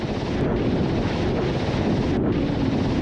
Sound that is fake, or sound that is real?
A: real